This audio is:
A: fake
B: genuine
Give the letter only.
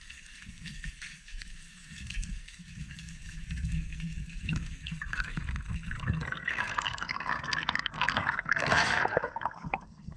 A